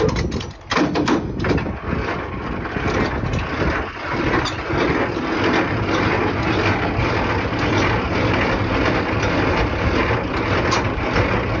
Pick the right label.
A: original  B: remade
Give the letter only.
A